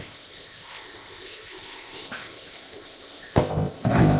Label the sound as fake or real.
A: fake